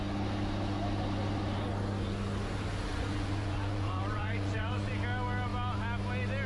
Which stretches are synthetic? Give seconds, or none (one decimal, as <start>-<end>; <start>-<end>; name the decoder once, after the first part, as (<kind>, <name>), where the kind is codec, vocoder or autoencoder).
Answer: 2.9-4.9 (vocoder, Vocos)